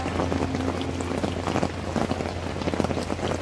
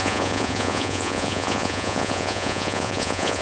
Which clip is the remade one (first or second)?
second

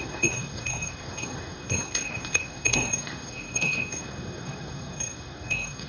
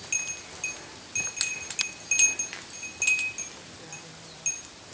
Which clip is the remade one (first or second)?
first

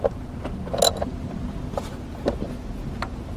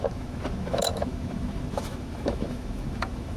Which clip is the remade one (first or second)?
second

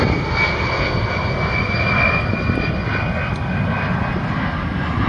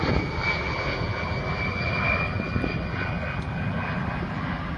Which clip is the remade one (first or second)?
second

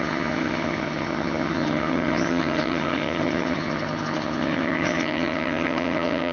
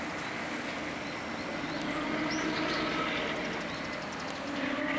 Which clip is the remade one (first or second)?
first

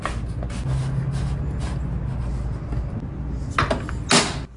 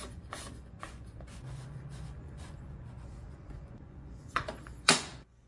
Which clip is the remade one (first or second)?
second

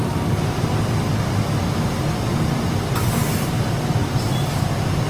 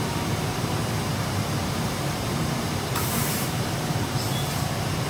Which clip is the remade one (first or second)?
second